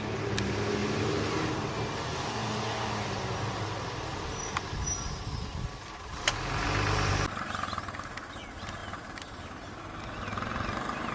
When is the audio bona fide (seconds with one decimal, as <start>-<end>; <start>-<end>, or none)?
0.0-11.1